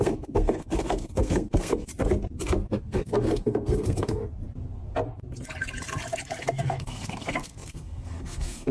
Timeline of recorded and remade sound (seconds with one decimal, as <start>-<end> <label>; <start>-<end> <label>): 0.0-1.9 remade; 1.9-2.8 recorded; 2.8-4.2 remade; 4.2-6.4 recorded; 6.4-8.7 remade